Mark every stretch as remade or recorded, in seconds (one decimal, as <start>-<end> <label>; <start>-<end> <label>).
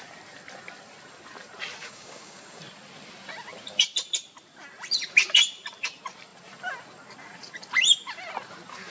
0.0-1.8 recorded; 1.8-2.6 remade; 2.6-8.9 recorded